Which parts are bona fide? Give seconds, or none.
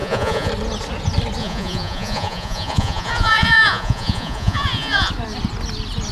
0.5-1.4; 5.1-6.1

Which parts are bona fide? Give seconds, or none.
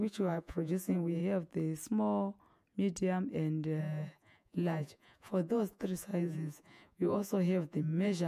1.2-3.8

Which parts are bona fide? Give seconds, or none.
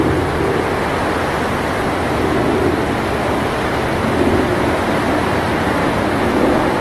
0.0-5.8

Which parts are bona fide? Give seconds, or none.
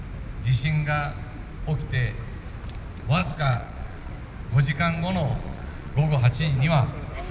0.0-3.2; 4.1-5.3; 6.2-7.3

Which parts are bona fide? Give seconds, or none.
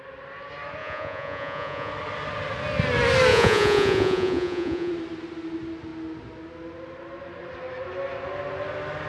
0.0-0.8; 1.9-3.3; 4.9-9.1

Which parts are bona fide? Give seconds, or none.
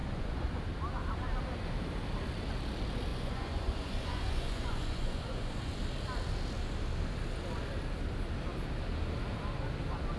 0.6-3.1; 5.8-10.2